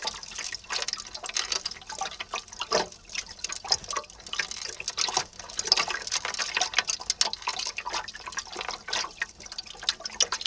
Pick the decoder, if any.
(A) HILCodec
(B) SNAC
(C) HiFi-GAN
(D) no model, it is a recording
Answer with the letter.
D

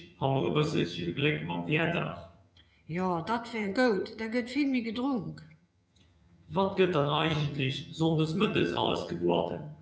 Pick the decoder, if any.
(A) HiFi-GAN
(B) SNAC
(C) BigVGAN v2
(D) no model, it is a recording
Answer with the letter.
A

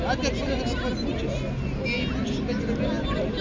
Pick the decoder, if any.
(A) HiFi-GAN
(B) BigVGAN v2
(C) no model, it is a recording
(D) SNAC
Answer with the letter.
C